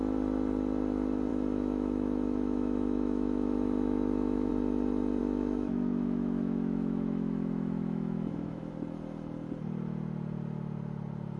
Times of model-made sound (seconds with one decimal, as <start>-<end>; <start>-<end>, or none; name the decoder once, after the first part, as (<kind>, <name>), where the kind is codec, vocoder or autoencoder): 1.3-4.5 (autoencoder, DAC-VAE); 5.2-8.7